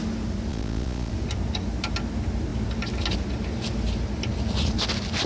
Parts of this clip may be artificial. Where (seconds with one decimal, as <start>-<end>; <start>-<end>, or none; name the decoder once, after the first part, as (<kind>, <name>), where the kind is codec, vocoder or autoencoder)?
0.5-1.1 (vocoder, Vocos)